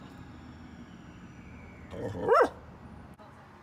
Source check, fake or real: real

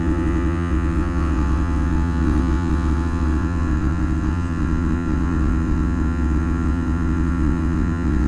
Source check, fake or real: fake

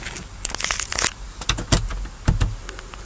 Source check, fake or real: real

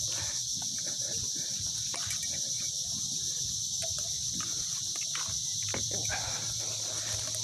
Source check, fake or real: real